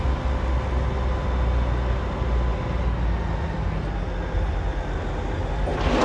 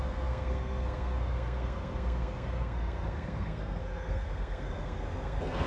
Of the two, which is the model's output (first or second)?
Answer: second